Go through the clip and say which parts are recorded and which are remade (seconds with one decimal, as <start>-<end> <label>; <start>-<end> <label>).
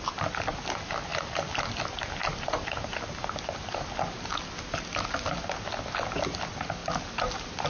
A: 0.0-7.7 recorded